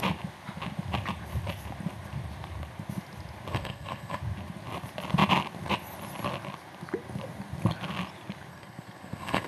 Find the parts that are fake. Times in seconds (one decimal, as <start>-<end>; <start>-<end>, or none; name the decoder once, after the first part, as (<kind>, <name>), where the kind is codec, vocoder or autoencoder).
3.5-4.2 (codec, SNAC); 8.5-9.5